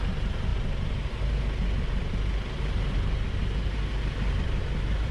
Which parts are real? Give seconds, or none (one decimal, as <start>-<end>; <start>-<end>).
0.0-5.1